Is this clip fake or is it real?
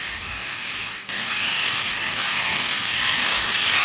fake